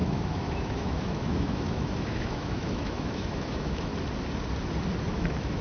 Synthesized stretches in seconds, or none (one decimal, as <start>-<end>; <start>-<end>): 0.0-3.9; 5.1-5.6